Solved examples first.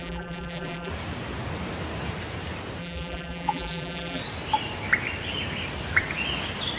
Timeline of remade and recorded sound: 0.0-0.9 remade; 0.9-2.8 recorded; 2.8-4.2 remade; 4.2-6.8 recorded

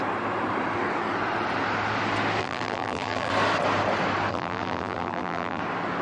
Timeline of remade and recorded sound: 0.0-2.4 recorded; 2.4-3.3 remade; 3.3-4.3 recorded; 4.3-5.6 remade; 5.6-6.0 recorded

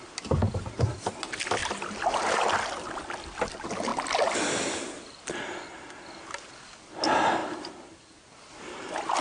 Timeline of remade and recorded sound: 0.0-1.6 recorded; 1.6-2.5 remade; 2.5-7.4 recorded; 7.4-8.5 remade; 8.5-9.2 recorded

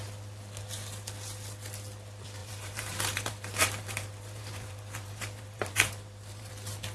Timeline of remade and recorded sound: 0.0-2.4 recorded; 2.4-6.5 remade; 6.5-6.9 recorded

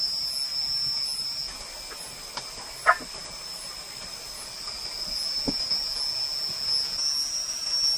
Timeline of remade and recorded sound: 0.0-8.0 recorded

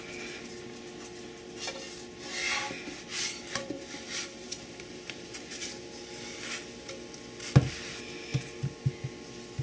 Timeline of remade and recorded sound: 0.0-3.1 recorded; 3.1-5.7 remade; 5.7-9.6 recorded

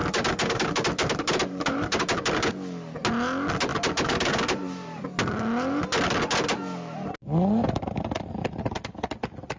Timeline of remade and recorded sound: 0.0-2.5 remade; 2.5-3.7 recorded; 3.7-5.0 remade; 5.0-9.6 recorded

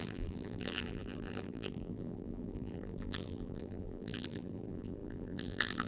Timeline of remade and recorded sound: 0.0-5.9 remade